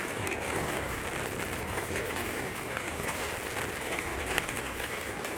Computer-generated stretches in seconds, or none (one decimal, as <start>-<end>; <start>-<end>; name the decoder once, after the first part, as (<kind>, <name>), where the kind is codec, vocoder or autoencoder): 0.0-1.0 (codec, DAC); 1.6-3.3; 3.8-5.4